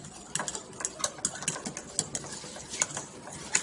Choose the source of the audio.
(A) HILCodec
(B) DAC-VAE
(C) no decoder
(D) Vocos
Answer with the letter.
C